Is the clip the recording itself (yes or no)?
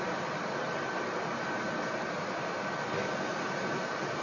yes